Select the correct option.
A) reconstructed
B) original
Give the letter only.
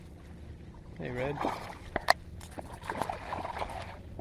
B